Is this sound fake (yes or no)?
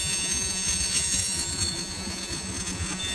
yes